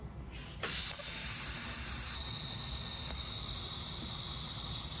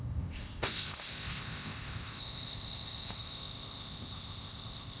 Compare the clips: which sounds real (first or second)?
first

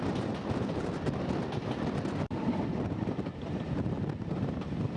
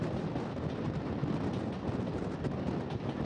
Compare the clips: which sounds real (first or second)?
second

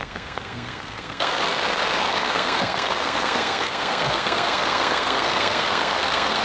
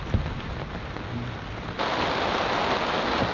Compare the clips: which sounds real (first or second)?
second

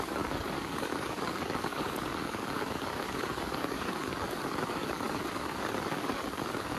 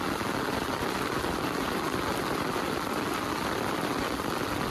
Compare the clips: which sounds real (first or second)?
second